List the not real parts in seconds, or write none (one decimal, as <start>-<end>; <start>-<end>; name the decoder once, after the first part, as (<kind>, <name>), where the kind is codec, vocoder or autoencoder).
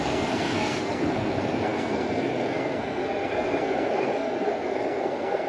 0.0-5.5 (codec, SNAC)